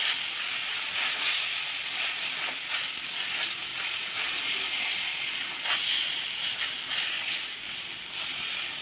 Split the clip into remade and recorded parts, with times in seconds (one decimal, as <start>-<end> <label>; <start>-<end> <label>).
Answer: 0.0-8.8 recorded